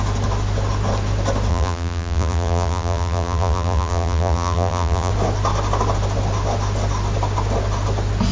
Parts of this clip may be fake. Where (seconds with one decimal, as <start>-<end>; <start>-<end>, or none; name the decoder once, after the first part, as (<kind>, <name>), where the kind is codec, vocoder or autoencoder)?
1.5-5.1 (vocoder, BigVGAN v2)